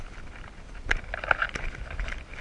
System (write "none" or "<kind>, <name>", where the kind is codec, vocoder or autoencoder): none